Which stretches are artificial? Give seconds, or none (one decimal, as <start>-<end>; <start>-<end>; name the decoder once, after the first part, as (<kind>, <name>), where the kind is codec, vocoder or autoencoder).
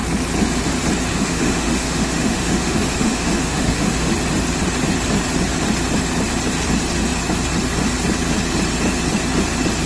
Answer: 1.1-4.1 (autoencoder, DAC-VAE)